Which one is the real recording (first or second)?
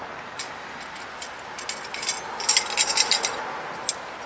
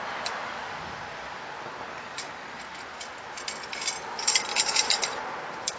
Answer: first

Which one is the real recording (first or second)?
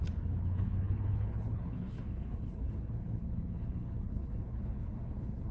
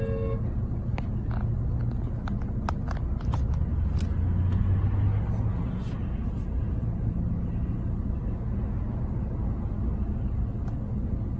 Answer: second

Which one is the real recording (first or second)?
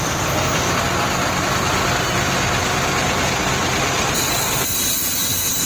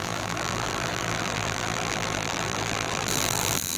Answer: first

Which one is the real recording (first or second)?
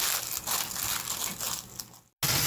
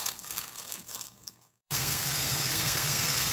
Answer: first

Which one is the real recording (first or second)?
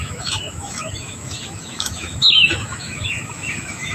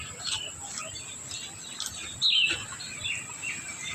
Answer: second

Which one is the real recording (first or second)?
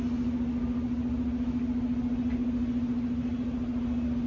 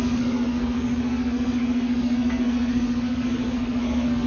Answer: first